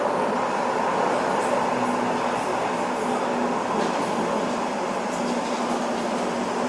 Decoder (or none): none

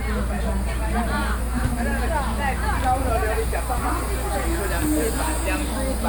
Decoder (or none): none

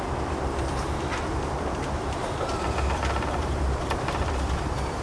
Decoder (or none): vocoder, BigVGAN v2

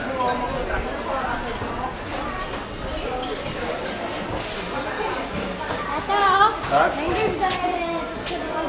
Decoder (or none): none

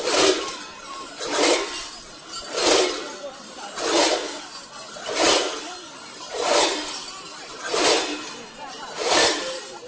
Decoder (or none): vocoder, BigVGAN v2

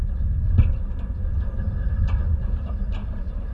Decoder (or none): none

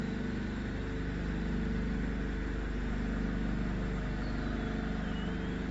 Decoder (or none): none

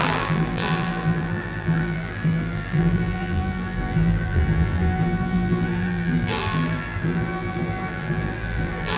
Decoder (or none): vocoder, BigVGAN v2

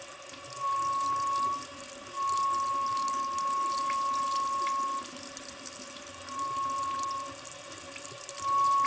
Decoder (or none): none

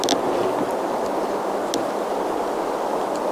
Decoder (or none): none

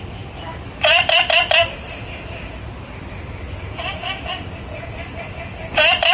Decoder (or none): vocoder, BigVGAN v2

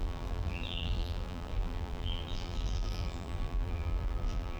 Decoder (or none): vocoder, BigVGAN v2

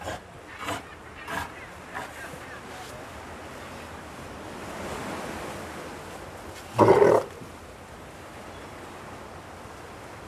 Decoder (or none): none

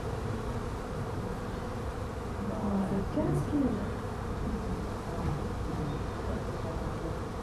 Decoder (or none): vocoder, BigVGAN v2